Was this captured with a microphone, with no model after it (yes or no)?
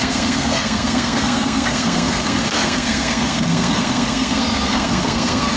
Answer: no